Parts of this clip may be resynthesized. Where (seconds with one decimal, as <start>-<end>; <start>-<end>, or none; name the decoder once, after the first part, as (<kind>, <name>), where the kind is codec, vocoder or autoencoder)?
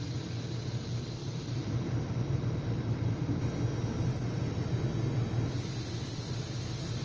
1.2-3.4 (vocoder, BigVGAN v2); 4.1-4.7